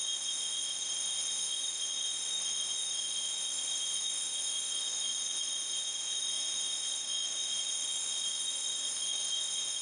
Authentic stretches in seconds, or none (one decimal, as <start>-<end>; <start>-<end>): none